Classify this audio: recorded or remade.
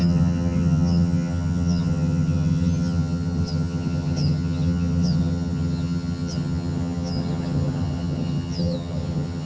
remade